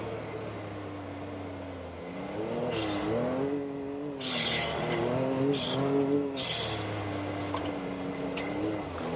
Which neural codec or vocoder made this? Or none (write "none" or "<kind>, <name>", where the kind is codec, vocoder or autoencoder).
none